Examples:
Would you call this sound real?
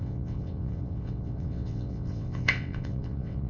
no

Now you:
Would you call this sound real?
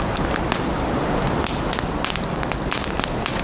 yes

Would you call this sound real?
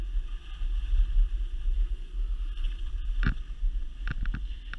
yes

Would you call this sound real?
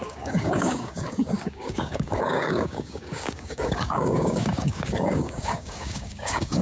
no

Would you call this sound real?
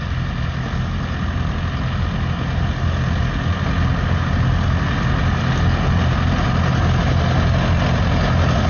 yes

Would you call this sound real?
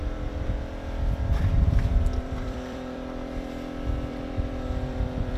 no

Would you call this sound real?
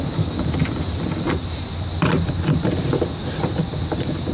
yes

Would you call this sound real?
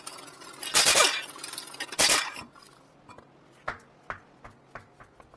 yes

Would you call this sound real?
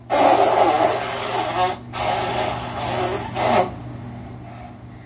yes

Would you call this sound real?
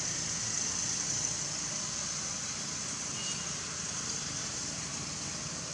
yes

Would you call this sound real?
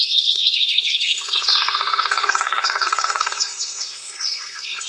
no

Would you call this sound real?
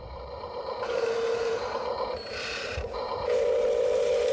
no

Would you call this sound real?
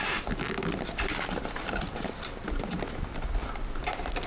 yes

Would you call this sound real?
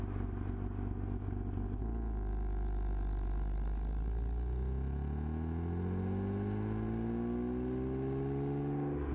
yes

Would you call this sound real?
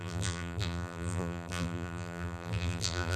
no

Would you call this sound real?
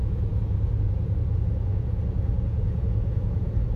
no